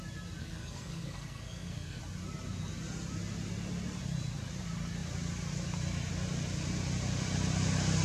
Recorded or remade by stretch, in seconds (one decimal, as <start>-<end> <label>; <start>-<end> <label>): 0.0-0.4 recorded; 0.4-2.0 remade; 2.0-8.0 recorded